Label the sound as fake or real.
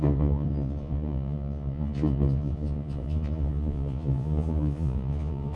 fake